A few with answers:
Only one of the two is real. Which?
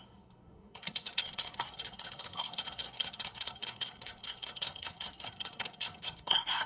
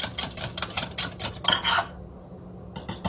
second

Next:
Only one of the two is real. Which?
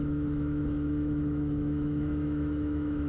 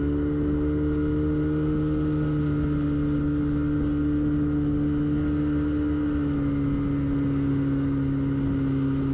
second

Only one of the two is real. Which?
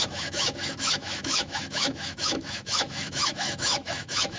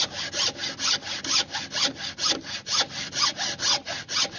second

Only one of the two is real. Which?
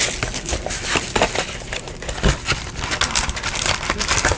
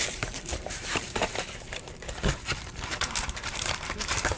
first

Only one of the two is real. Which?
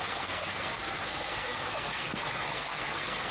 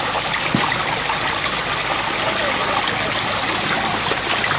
second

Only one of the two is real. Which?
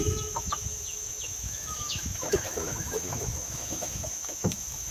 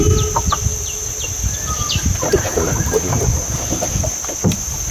second